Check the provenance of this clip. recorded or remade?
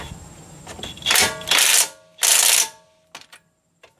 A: recorded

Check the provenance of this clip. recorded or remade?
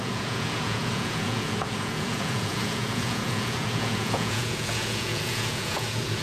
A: remade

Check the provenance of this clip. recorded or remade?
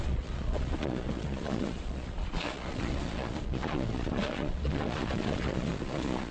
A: remade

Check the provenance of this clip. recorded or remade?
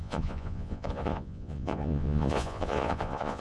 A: remade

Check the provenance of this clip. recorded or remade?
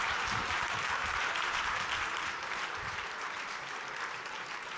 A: remade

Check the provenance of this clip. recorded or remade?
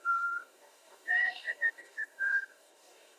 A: remade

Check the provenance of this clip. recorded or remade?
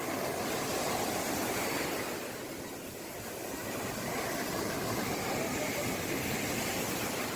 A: recorded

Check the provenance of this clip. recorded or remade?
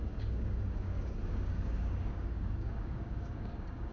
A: remade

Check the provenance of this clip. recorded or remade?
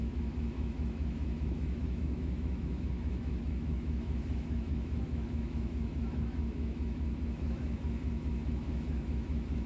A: remade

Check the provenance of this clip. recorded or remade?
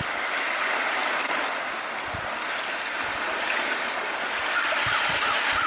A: remade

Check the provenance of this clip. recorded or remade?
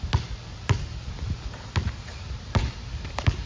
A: recorded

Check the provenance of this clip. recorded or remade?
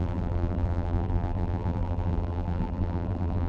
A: remade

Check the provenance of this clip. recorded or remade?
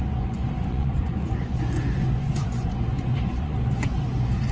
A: remade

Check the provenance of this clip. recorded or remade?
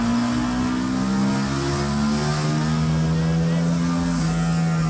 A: recorded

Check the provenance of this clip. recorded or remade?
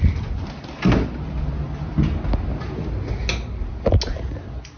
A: recorded